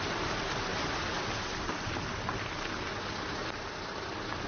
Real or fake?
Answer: real